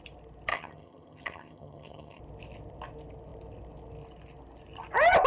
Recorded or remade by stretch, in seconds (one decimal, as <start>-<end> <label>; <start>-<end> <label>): 0.0-0.5 recorded; 0.5-2.2 remade; 2.2-5.3 recorded